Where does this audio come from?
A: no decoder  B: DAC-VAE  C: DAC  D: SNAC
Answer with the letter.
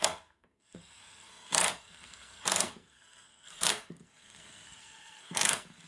D